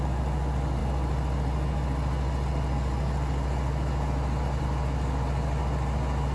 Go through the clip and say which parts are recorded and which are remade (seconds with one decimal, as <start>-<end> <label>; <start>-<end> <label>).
0.0-6.3 recorded